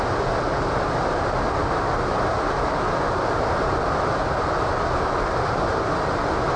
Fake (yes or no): no